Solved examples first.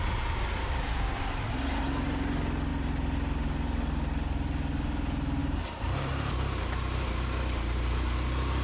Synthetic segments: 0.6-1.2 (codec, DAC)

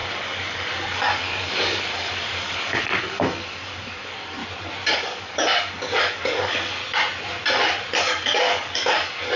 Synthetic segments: 0.0-4.4 (codec, DAC); 4.9-6.8; 8.0-9.4